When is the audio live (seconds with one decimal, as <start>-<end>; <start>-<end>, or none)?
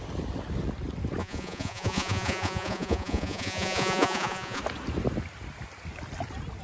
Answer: 0.0-1.2; 4.6-6.6